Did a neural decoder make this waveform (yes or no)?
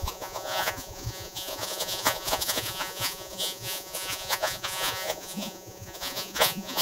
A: yes